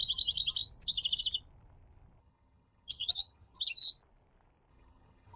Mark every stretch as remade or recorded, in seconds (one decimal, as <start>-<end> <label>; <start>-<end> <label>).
0.0-2.2 recorded; 2.2-3.6 remade; 3.6-4.7 recorded; 4.7-5.4 remade